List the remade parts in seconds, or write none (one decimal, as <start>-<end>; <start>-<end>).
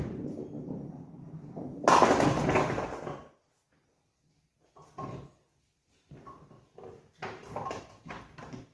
none